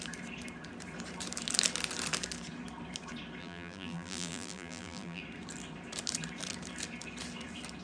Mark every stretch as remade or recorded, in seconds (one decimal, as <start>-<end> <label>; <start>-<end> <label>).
0.0-3.4 recorded; 3.4-5.2 remade; 5.2-7.8 recorded